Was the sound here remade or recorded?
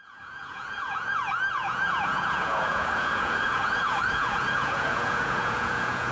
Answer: remade